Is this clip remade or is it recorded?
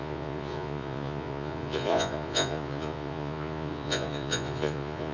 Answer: remade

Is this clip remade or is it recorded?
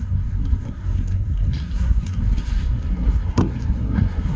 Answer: remade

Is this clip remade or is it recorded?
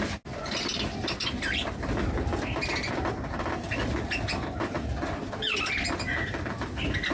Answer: recorded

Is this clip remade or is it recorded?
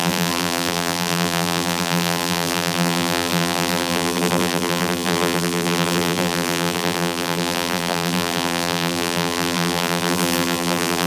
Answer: remade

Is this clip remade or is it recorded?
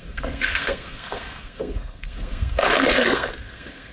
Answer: remade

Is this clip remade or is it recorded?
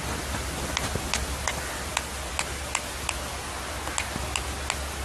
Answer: recorded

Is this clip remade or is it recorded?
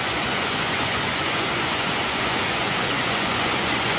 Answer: remade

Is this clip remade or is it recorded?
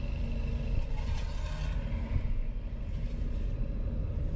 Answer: recorded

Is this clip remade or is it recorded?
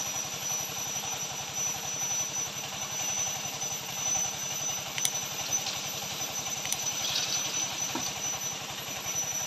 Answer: remade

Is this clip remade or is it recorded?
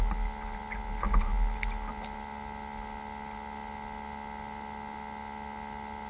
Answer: recorded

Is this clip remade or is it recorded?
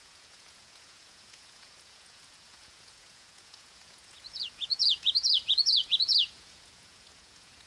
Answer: remade